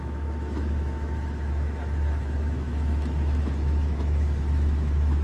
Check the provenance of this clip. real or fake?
fake